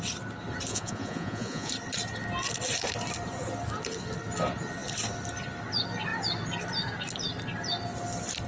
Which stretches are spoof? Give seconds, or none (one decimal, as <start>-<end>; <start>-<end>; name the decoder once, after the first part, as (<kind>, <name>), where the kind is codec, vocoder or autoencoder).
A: 0.7-1.7 (vocoder, Vocos)